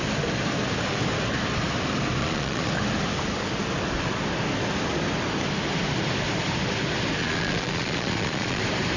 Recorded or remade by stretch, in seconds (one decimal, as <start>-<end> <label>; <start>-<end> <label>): 0.0-2.2 recorded; 2.2-2.7 remade; 2.7-7.2 recorded; 7.2-8.6 remade; 8.6-9.0 recorded